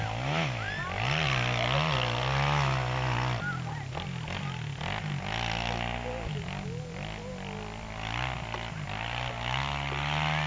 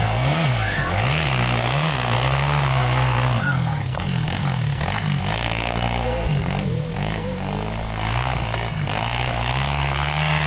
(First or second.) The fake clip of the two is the second